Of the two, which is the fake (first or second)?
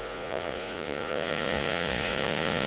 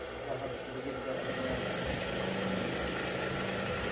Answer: first